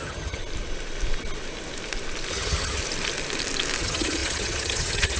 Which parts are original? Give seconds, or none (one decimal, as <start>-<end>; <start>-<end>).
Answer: 0.4-2.3; 2.8-3.8